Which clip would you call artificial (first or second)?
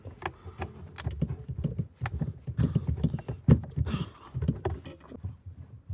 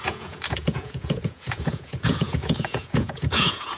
second